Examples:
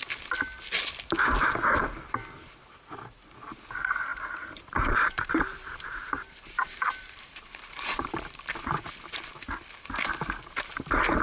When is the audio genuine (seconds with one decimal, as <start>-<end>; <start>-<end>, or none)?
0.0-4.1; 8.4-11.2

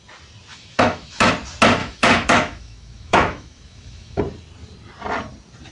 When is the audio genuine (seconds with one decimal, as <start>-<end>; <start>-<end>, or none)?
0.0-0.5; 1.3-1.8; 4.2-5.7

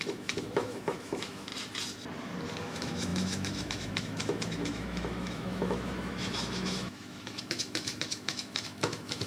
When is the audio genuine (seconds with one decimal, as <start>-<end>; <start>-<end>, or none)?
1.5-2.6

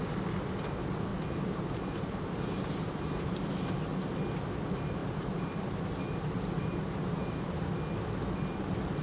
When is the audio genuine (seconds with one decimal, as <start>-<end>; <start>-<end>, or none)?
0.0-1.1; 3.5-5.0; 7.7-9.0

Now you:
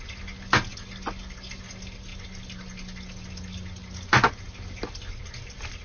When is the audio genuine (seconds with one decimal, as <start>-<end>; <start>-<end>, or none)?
0.0-5.8

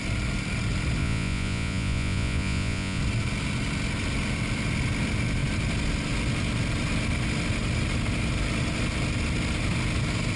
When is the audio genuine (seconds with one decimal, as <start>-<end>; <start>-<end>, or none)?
0.0-1.0; 3.0-10.4